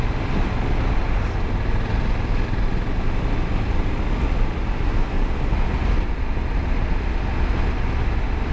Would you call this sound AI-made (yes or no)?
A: no